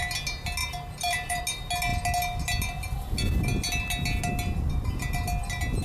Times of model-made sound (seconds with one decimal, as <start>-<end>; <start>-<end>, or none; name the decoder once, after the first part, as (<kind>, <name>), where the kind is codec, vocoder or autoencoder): 0.6-1.4 (vocoder, BigVGAN v2)